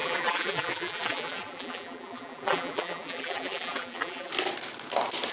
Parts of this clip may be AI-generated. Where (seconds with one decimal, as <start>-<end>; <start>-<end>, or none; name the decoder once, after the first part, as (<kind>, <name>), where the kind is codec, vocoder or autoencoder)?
0.0-4.3 (vocoder, BigVGAN v2)